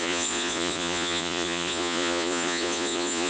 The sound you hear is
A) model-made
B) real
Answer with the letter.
A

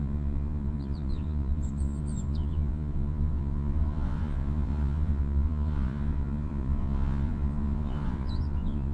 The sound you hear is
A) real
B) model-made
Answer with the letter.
B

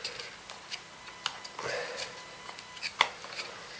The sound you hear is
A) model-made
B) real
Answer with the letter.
B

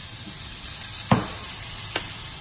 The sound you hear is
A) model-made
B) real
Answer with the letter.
B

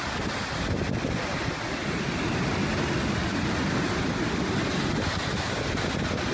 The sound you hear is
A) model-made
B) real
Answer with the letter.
B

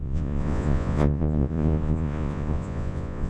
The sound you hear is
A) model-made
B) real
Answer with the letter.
A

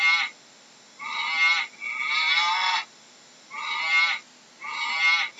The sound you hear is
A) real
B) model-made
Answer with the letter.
A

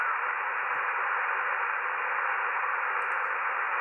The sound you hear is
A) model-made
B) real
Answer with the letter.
B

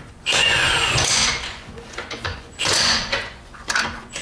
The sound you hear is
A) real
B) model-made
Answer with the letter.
B